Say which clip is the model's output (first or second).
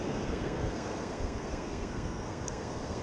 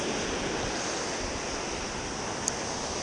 first